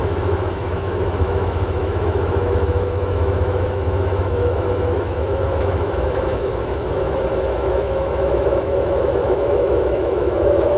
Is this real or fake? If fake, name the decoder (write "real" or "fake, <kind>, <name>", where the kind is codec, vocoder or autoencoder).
fake, autoencoder, DAC-VAE